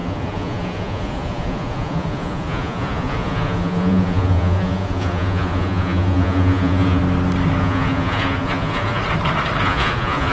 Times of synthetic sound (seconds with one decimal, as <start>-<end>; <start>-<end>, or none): 0.0-7.0; 7.6-9.0; 9.6-10.3